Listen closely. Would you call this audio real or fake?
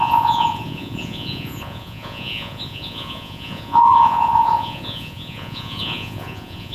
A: fake